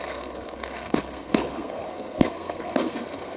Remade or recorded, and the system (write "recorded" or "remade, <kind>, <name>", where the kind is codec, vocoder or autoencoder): remade, codec, SNAC